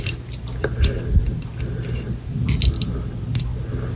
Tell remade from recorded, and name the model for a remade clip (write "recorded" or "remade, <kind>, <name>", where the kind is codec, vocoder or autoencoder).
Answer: recorded